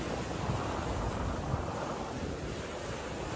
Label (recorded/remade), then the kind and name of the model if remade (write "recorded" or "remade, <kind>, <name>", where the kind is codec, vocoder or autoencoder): recorded